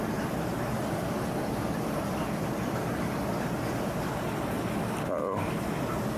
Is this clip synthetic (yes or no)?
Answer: no